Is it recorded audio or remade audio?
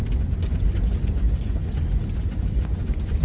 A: remade